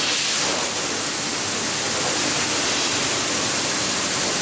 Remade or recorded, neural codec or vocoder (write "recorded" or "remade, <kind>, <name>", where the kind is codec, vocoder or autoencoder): recorded